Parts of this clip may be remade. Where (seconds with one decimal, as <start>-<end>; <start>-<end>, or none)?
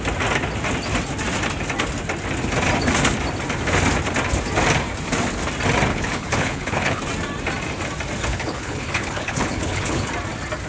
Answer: 5.9-7.0; 8.3-10.1